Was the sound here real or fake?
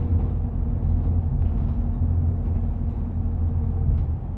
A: real